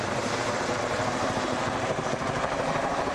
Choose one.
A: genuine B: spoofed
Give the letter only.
B